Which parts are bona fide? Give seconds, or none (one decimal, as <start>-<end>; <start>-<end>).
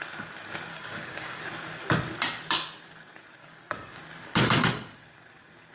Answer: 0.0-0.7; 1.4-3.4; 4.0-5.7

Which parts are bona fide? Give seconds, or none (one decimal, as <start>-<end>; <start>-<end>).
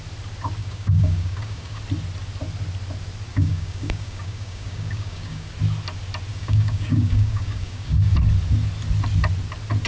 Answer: 0.0-0.6; 1.8-3.3; 5.5-6.3; 8.1-9.9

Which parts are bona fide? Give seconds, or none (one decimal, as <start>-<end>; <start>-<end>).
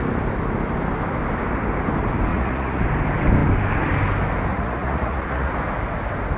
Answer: 0.0-2.3; 2.8-4.5; 5.5-6.4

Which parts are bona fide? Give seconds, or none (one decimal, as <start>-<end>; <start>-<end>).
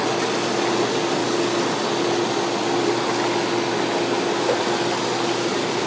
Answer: 0.0-5.9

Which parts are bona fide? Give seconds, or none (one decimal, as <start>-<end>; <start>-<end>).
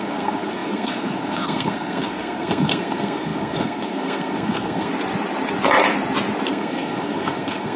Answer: 4.9-6.5